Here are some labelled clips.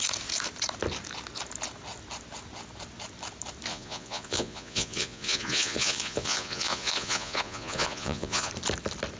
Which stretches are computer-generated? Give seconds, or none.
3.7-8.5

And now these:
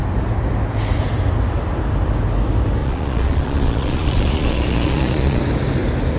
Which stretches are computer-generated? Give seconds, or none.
2.8-5.4

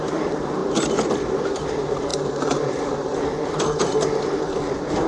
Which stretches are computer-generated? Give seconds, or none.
0.0-0.6; 1.4-5.1